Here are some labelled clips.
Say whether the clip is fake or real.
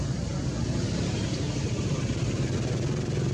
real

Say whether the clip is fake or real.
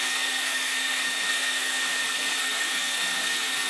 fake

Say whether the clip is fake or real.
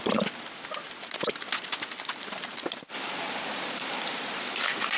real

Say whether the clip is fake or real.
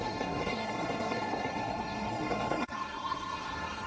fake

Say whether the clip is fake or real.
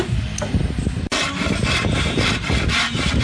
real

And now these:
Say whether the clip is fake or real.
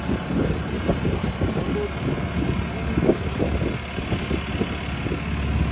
real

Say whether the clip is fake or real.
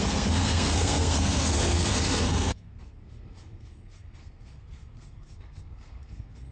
fake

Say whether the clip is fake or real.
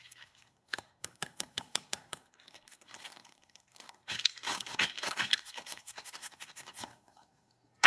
fake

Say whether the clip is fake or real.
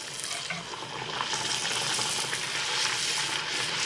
real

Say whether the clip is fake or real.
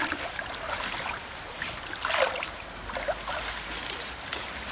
real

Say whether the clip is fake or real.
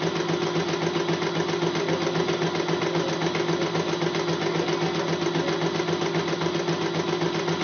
real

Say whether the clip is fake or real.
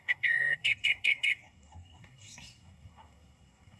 fake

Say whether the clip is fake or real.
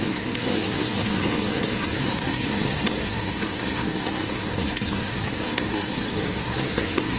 fake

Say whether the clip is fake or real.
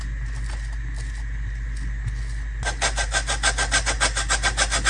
real